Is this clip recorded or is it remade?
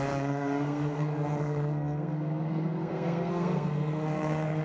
remade